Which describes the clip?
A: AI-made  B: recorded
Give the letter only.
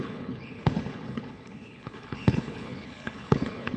A